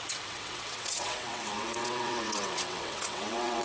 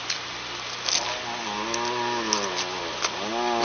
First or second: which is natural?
second